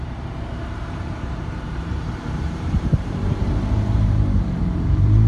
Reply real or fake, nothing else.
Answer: fake